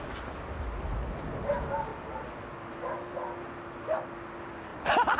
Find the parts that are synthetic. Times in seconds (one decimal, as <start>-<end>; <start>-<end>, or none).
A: none